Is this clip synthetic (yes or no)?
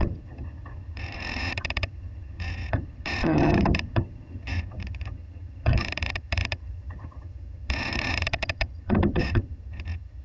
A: yes